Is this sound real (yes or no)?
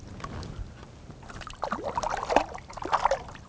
yes